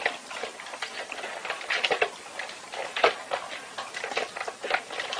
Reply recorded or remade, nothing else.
recorded